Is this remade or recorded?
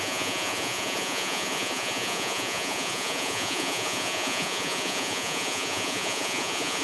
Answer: remade